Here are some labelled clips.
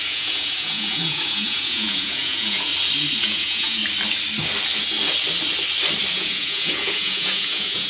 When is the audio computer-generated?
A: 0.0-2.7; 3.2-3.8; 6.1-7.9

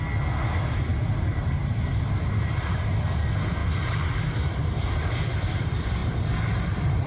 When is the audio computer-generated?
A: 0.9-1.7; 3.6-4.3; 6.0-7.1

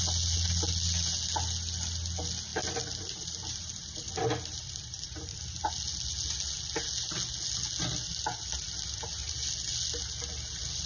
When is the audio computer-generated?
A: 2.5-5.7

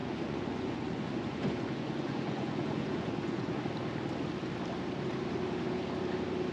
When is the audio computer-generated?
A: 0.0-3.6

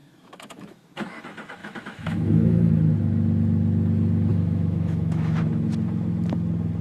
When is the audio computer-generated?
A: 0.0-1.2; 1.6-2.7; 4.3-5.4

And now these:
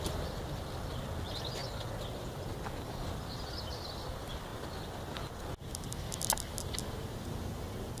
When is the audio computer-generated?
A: none

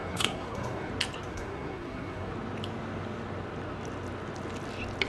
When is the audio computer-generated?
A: 0.0-0.9; 1.3-2.3

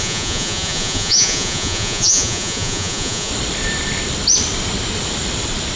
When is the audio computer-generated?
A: 0.0-3.3